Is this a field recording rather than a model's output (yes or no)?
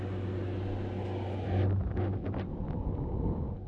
yes